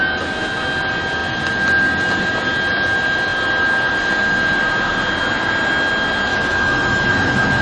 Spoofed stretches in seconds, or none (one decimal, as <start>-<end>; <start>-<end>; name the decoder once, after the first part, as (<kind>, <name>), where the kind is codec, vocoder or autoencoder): 6.3-7.6 (autoencoder, DAC-VAE)